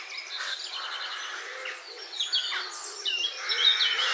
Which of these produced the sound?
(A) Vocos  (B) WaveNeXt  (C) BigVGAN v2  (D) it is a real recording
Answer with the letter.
D